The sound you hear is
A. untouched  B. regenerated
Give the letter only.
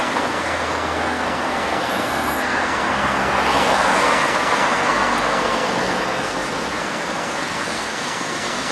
B